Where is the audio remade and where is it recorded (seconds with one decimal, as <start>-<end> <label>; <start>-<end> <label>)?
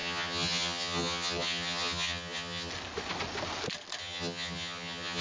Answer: 0.0-2.7 remade; 2.7-4.0 recorded; 4.0-5.2 remade